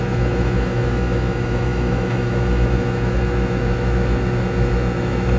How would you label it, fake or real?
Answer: fake